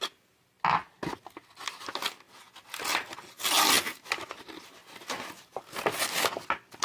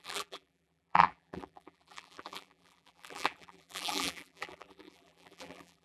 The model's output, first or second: second